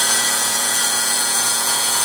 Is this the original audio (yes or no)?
no